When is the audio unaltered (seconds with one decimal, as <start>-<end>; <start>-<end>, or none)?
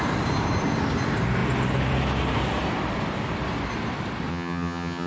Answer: 0.0-4.3